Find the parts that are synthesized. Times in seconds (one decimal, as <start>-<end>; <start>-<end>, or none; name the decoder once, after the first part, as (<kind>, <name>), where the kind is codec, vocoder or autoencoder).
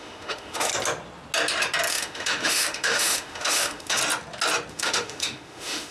0.0-0.7 (autoencoder, DAC-VAE); 1.9-4.0; 4.7-5.9